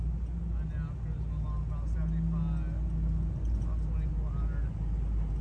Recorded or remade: recorded